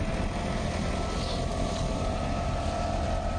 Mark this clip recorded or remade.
recorded